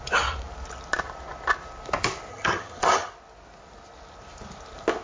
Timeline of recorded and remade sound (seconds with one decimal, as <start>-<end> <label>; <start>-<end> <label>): 0.0-2.3 recorded; 2.3-3.1 remade; 3.1-5.0 recorded